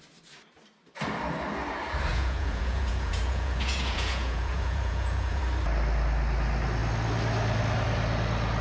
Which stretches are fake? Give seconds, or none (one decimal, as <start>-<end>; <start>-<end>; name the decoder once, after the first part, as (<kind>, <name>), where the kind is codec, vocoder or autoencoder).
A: 2.1-5.4 (vocoder, Vocos)

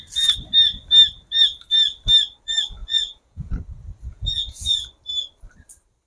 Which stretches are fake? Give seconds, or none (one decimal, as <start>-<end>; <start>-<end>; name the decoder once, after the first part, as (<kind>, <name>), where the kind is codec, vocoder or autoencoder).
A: 2.8-3.5 (vocoder, Vocos); 4.1-4.8

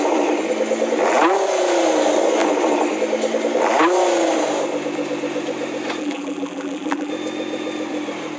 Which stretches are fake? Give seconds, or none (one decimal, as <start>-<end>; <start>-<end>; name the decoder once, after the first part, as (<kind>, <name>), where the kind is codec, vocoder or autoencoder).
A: 6.0-7.1 (vocoder, BigVGAN v2)

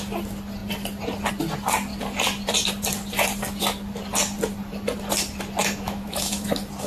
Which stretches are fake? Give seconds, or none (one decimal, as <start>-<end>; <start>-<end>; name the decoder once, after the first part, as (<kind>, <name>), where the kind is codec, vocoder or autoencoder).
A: 5.6-6.5 (autoencoder, DAC-VAE)

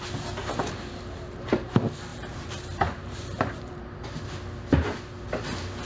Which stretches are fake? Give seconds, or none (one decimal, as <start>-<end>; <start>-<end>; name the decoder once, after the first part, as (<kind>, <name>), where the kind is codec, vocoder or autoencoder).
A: 2.1-3.8 (vocoder, BigVGAN v2)

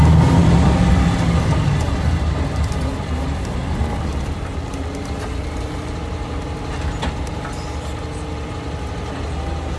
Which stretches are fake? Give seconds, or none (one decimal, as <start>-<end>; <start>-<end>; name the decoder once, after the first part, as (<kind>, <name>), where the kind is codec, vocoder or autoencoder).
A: 0.4-1.1 (vocoder, BigVGAN v2); 4.1-4.7

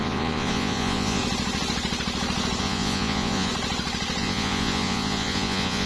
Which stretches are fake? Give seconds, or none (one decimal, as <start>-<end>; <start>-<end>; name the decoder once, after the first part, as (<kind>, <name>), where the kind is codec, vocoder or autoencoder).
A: 0.0-1.2 (vocoder, Vocos); 2.6-3.5; 4.2-5.9